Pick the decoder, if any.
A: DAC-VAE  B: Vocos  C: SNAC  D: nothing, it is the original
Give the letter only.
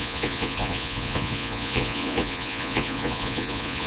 B